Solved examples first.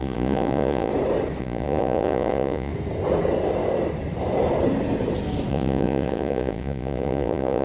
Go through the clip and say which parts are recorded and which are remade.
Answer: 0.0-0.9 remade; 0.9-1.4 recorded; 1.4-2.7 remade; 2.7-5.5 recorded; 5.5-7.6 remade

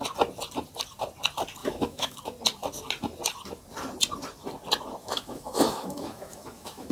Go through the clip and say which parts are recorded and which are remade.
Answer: 0.0-1.6 recorded; 1.6-2.2 remade; 2.2-5.0 recorded; 5.0-6.9 remade

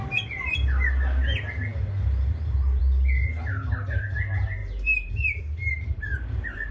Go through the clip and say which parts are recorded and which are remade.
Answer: 0.0-4.6 recorded; 4.6-6.7 remade

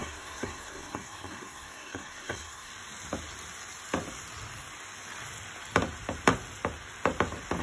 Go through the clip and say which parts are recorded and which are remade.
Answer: 0.0-2.7 remade; 2.7-7.6 recorded

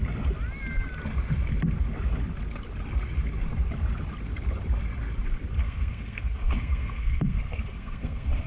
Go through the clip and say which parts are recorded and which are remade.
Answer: 0.0-5.6 recorded; 5.6-8.5 remade

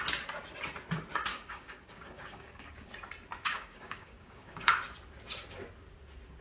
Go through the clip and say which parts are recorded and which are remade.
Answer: 0.0-1.3 recorded; 1.3-2.9 remade; 2.9-3.5 recorded; 3.5-4.9 remade; 4.9-6.4 recorded

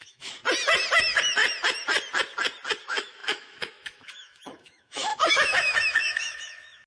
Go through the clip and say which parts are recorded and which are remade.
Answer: 0.0-0.4 remade; 0.4-1.0 recorded; 1.0-1.4 remade; 1.4-2.8 recorded; 2.8-6.9 remade

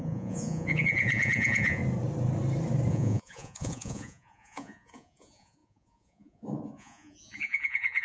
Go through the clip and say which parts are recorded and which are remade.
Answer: 0.0-1.8 remade; 1.8-2.9 recorded; 2.9-8.0 remade